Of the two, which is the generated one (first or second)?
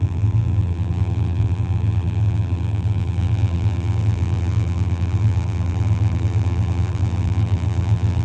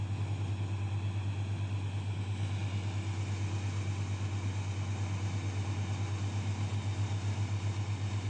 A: first